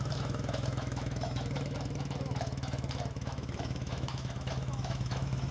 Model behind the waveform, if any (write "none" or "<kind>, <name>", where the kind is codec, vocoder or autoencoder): autoencoder, DAC-VAE